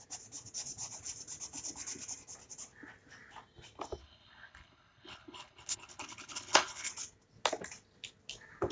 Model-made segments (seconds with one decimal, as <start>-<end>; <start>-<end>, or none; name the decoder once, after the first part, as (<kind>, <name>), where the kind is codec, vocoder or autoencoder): 4.0-6.9 (codec, HILCodec)